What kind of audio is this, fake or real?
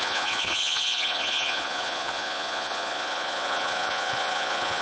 fake